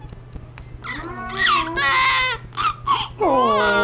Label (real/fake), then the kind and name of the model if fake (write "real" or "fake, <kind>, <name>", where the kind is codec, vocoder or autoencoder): real